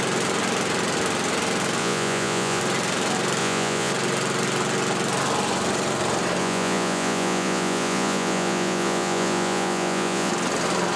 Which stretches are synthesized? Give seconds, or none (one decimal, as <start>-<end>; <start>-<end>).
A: 1.8-2.6; 3.4-3.9; 6.4-10.3